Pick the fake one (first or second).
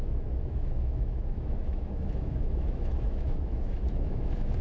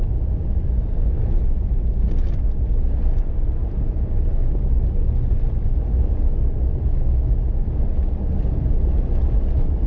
first